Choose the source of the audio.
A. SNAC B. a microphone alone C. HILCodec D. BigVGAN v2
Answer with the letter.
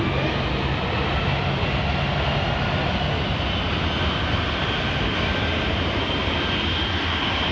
B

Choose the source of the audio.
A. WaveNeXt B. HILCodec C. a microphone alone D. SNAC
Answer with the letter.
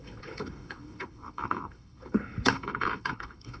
B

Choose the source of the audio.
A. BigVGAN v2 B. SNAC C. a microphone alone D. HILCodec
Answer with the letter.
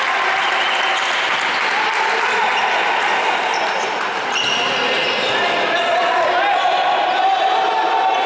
C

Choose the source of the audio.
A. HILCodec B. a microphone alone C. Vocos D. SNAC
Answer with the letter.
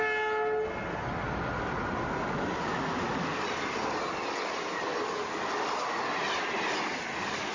B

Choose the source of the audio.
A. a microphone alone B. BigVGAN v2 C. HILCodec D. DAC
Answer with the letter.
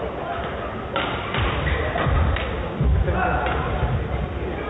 A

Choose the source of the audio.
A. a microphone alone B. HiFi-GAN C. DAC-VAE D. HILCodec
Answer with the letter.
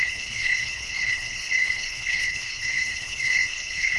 D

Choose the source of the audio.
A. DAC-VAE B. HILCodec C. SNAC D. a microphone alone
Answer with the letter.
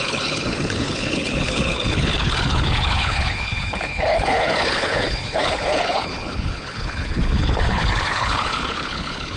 B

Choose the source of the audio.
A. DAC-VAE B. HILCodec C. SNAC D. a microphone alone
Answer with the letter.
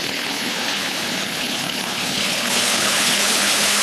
B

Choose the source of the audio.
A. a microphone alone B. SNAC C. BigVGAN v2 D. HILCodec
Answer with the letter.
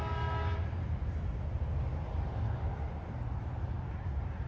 A